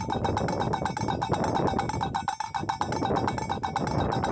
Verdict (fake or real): real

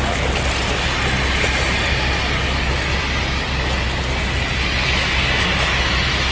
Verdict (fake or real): real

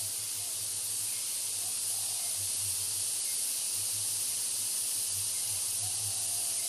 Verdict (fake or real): real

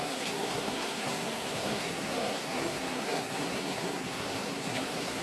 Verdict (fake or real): fake